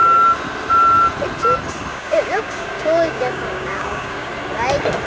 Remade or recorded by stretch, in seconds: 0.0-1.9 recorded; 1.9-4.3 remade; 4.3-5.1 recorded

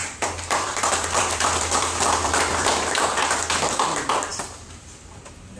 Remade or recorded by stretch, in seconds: 0.0-3.4 remade; 3.4-4.3 recorded; 4.3-5.6 remade

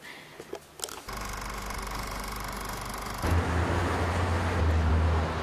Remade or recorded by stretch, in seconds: 0.0-5.4 recorded

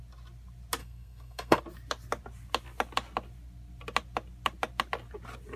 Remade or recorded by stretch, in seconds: 0.0-0.8 recorded; 0.8-1.6 remade; 1.6-5.6 recorded

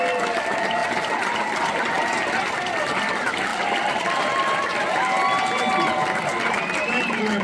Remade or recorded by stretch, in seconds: 0.0-0.8 recorded; 0.8-2.4 remade; 2.4-3.5 recorded; 3.5-5.0 remade; 5.0-7.4 recorded